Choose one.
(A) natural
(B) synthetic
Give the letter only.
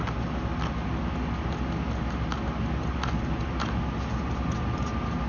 A